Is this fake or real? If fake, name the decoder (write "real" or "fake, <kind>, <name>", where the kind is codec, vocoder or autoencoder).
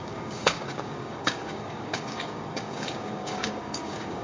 fake, codec, DAC